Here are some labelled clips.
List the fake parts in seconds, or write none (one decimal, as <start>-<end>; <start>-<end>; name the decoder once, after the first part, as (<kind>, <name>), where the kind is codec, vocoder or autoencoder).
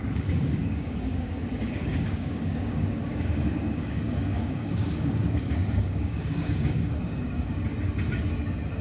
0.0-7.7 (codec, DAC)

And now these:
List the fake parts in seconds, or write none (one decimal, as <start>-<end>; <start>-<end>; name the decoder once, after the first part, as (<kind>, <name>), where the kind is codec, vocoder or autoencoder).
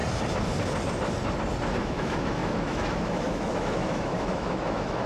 1.8-5.1 (autoencoder, DAC-VAE)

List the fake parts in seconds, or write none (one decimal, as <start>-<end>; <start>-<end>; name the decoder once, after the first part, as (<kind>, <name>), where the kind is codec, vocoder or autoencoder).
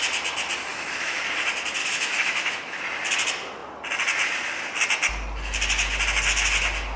0.7-1.2 (autoencoder, DAC-VAE); 1.8-2.8